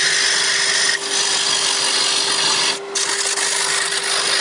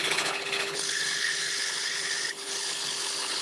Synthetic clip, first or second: second